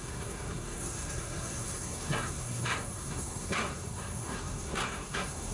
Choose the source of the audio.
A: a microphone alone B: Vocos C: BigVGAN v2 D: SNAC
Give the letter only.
D